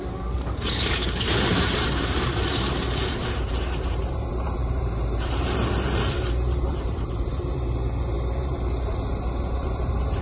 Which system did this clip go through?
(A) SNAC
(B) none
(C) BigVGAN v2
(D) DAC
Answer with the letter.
C